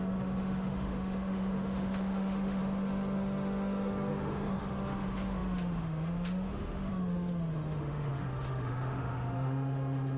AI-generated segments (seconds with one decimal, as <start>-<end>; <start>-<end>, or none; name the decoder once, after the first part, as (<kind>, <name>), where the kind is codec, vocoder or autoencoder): 0.0-10.2 (autoencoder, DAC-VAE)